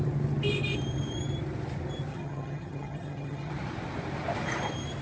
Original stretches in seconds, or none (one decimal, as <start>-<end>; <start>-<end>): 0.0-2.1; 3.5-5.0